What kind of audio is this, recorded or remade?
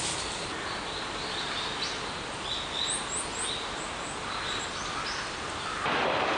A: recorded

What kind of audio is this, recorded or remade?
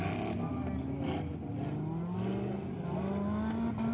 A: recorded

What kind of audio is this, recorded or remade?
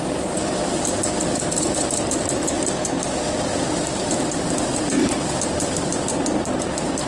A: remade